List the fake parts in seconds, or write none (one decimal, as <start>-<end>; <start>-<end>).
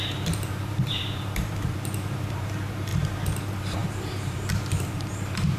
0.0-2.9; 3.4-5.6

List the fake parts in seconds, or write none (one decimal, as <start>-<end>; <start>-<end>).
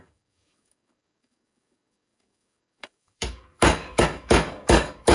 0.0-5.1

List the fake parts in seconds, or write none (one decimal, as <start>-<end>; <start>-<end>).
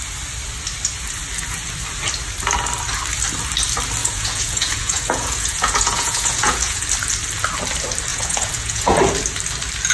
4.0-6.8; 8.1-9.0